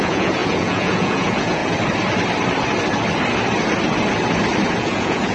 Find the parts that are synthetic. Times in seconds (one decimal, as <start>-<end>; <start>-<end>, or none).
0.0-1.6; 4.8-5.3